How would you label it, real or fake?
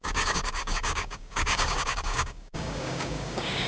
fake